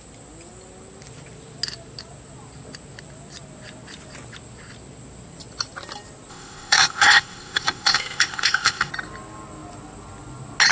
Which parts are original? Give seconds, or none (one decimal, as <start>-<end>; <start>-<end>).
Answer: 0.0-6.3; 8.9-10.7